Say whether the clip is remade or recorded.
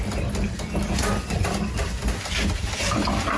recorded